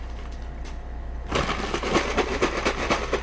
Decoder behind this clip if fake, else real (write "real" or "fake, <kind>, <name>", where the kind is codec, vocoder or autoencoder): real